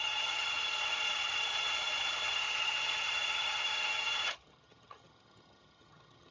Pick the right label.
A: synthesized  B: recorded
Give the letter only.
A